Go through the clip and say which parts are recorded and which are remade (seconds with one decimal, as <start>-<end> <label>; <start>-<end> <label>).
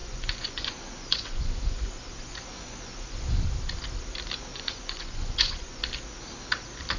0.0-1.9 remade; 1.9-2.3 recorded; 2.3-3.4 remade; 3.4-4.5 recorded; 4.5-5.8 remade; 5.8-7.0 recorded